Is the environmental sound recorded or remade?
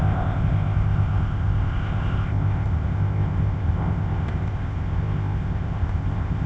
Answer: remade